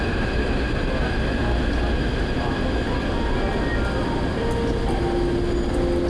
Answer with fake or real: real